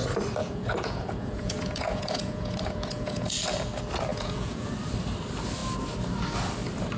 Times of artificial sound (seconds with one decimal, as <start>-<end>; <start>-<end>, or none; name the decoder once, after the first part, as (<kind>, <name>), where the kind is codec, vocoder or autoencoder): 0.4-3.3 (vocoder, Vocos); 4.1-4.7